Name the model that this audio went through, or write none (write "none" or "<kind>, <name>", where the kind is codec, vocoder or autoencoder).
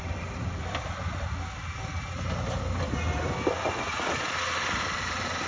none